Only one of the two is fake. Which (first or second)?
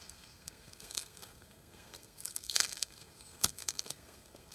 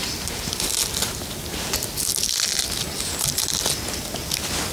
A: first